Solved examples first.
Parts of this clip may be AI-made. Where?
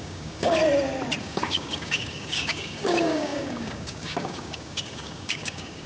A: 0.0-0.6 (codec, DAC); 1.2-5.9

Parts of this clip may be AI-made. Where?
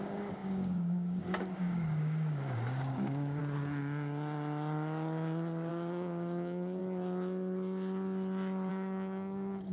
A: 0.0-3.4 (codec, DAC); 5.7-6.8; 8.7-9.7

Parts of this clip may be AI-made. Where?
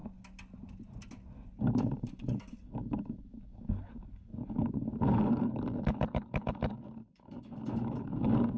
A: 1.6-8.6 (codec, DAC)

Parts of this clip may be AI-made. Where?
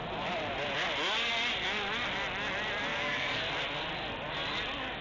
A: 2.9-3.4 (codec, DAC)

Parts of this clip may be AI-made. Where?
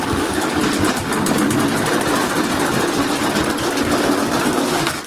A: 0.0-0.6 (codec, DAC); 3.6-5.1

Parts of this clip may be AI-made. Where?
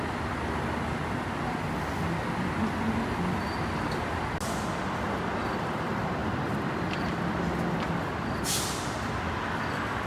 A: none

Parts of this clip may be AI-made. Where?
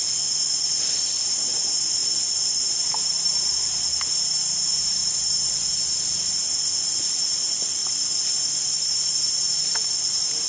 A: none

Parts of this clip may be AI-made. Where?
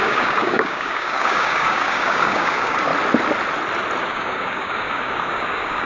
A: 0.0-2.9 (codec, DAC); 4.0-5.9